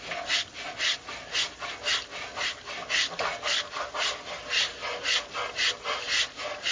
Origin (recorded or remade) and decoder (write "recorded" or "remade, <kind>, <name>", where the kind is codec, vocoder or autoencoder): recorded